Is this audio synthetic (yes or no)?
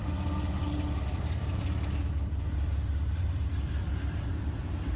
yes